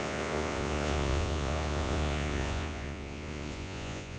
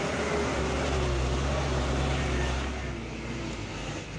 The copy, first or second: first